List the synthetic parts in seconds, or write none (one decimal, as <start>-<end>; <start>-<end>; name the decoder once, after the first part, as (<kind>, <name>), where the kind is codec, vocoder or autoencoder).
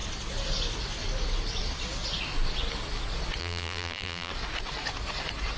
3.4-4.3 (vocoder, BigVGAN v2)